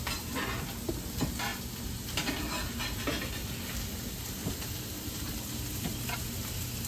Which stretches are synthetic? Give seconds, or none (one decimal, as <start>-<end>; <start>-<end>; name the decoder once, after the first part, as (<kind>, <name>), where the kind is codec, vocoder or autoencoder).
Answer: 4.4-6.5 (vocoder, BigVGAN v2)